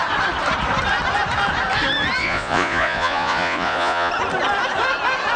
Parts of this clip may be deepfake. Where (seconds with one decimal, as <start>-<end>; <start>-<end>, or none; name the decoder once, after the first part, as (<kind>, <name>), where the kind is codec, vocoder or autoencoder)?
2.2-4.1 (vocoder, Vocos)